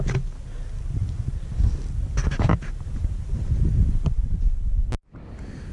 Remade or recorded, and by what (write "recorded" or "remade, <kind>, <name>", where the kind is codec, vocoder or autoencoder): recorded